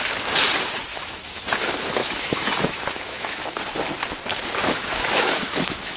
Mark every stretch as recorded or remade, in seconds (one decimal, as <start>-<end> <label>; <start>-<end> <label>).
0.0-0.9 recorded; 0.9-1.5 remade; 1.5-2.0 recorded; 2.0-3.6 remade; 3.6-4.6 recorded; 4.6-6.0 remade